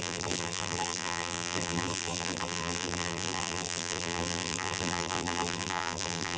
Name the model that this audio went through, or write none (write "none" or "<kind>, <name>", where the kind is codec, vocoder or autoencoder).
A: vocoder, BigVGAN v2